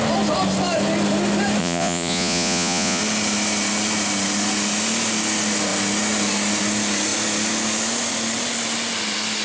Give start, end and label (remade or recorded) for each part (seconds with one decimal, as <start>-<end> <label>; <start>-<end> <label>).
0.0-1.6 recorded; 1.6-3.0 remade; 3.0-9.4 recorded